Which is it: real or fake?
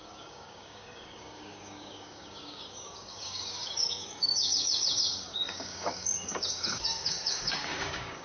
fake